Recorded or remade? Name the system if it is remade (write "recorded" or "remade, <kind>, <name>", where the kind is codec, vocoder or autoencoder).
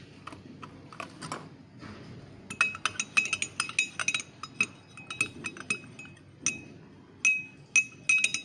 recorded